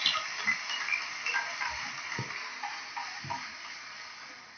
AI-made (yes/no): no